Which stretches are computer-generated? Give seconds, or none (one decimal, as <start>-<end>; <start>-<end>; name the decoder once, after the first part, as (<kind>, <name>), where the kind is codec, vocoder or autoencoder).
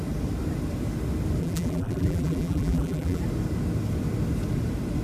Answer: 1.4-3.2 (vocoder, BigVGAN v2)